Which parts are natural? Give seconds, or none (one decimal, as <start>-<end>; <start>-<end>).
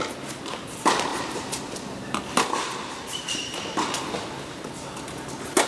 0.0-1.1; 2.2-2.8; 3.6-5.7